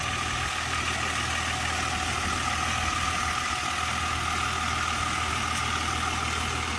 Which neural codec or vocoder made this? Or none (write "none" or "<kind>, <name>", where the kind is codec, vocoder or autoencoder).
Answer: none